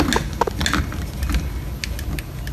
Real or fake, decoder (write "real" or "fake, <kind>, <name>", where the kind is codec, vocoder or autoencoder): real